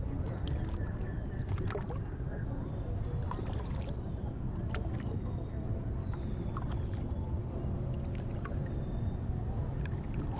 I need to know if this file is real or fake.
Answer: real